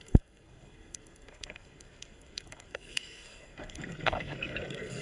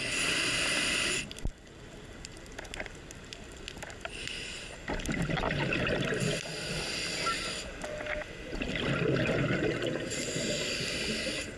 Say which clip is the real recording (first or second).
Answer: second